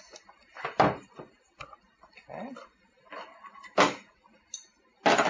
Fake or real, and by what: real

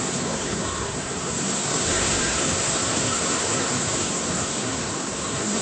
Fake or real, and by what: fake, codec, SNAC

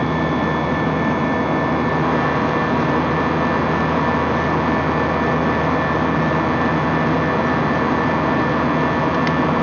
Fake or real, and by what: real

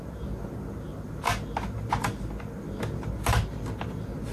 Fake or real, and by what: real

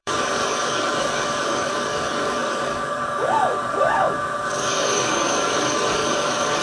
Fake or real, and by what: fake, codec, DAC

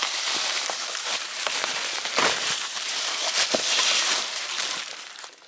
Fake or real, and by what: fake, vocoder, BigVGAN v2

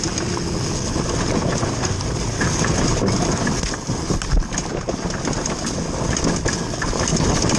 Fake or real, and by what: real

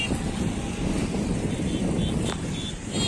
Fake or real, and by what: real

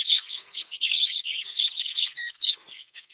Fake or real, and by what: fake, codec, SNAC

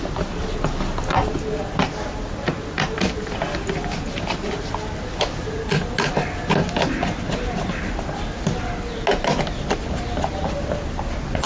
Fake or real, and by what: real